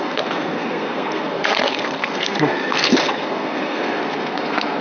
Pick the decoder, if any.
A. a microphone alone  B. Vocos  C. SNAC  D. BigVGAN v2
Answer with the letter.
C